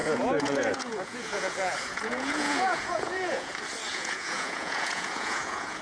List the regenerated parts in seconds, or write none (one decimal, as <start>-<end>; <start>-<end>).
0.0-3.5; 3.9-5.8